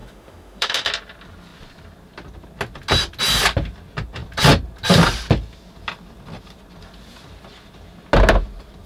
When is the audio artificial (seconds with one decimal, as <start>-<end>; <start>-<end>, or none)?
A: 0.0-0.9